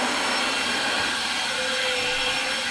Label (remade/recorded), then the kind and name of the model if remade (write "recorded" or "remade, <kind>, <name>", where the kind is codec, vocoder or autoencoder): recorded